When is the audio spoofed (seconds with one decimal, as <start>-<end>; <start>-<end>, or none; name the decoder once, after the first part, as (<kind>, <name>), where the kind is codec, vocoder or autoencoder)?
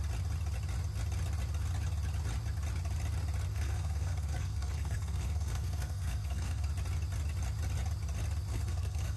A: 3.5-6.7 (codec, SNAC); 8.5-9.2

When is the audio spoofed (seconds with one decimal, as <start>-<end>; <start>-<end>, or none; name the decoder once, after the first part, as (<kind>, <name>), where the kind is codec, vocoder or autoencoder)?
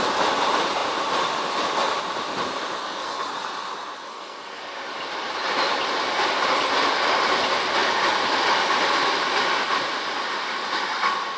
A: 2.8-3.3 (codec, SNAC); 4.0-4.6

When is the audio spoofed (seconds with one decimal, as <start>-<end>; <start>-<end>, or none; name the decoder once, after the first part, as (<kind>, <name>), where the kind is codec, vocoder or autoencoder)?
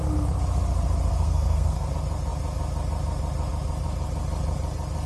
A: 1.1-1.9 (codec, SNAC)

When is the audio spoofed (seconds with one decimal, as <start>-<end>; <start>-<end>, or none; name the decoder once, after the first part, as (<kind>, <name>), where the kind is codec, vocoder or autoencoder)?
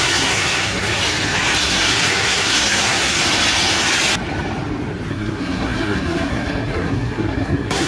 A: 0.0-1.0 (codec, SNAC); 1.6-3.2; 5.1-7.9